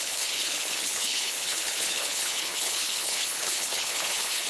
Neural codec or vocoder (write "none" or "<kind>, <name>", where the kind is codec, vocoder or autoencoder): codec, HILCodec